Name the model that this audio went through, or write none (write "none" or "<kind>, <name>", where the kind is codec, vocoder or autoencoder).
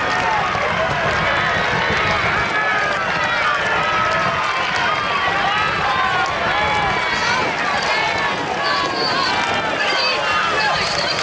none